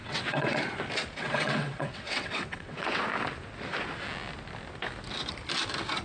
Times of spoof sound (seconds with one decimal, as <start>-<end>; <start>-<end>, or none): 0.0-0.6; 1.2-3.0